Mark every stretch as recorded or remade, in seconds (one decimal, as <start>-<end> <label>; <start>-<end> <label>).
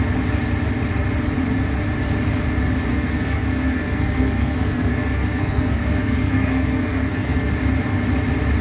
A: 0.0-2.9 recorded; 2.9-7.5 remade; 7.5-8.6 recorded